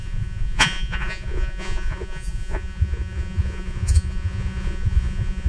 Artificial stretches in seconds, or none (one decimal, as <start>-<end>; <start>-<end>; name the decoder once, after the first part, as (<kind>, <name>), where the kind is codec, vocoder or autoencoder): 0.0-5.5 (vocoder, Vocos)